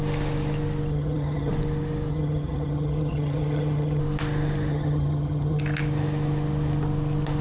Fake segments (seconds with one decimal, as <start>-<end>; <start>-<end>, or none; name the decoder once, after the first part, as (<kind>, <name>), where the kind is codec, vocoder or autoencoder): 0.9-1.5 (vocoder, HiFi-GAN); 2.1-4.0; 4.7-5.6